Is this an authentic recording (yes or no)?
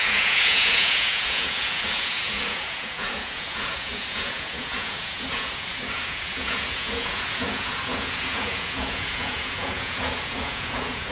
no